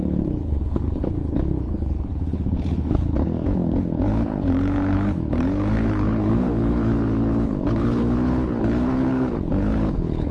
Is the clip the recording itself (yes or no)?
no